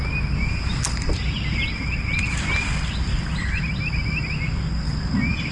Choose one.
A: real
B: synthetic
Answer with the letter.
A